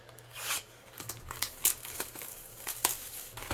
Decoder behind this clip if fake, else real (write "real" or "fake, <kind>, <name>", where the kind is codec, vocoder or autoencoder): fake, codec, DAC